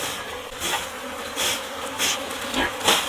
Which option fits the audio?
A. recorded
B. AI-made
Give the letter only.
A